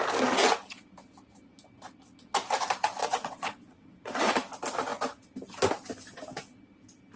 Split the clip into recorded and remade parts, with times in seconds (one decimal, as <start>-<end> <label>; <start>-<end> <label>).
0.0-3.0 recorded; 3.0-4.3 remade; 4.3-7.2 recorded